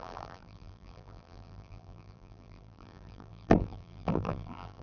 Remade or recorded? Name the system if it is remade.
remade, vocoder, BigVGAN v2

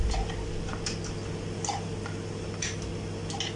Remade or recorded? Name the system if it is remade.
recorded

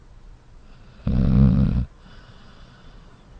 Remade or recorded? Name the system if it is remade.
remade, vocoder, Vocos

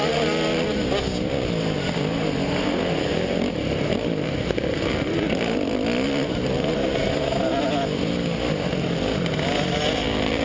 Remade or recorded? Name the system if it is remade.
recorded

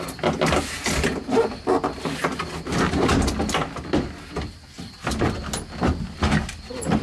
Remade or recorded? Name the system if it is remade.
recorded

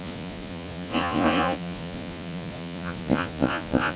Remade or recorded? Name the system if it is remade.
remade, vocoder, Vocos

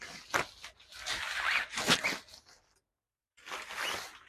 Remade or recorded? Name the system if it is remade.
recorded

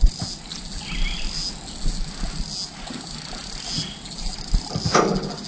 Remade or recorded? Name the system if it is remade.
recorded